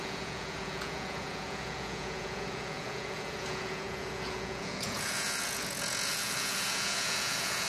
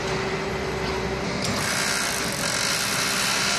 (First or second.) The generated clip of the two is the first